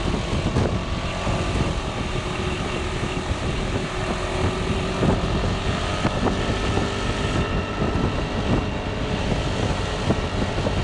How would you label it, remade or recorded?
recorded